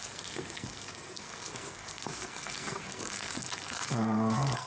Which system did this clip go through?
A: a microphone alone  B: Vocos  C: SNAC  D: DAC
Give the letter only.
C